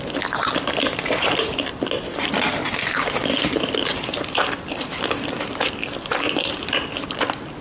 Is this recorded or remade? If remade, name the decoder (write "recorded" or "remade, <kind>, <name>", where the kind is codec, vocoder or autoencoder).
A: remade, vocoder, BigVGAN v2